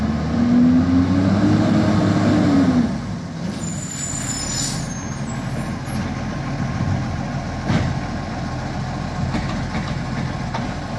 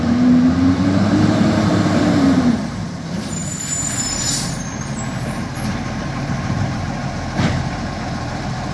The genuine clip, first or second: first